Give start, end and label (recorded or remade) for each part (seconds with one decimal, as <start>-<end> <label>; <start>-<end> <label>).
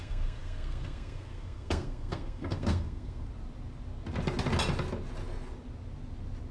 0.0-3.2 remade; 3.2-6.5 recorded